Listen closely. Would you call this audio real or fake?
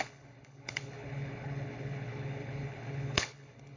fake